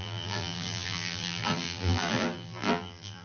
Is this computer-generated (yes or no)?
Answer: yes